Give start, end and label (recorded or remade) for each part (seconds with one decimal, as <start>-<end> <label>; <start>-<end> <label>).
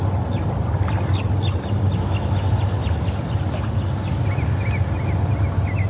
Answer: 0.0-5.9 recorded